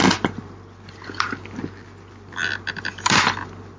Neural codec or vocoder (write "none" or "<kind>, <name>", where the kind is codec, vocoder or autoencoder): none